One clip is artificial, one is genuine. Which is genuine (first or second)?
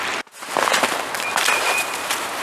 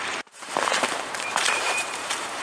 first